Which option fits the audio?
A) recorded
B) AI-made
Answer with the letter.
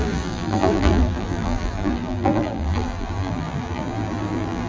B